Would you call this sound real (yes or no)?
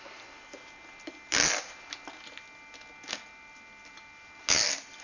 yes